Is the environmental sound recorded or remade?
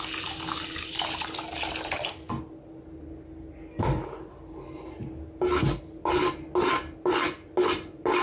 recorded